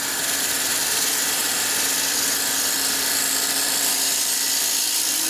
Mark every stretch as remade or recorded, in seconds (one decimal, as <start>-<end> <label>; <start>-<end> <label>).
0.0-5.3 remade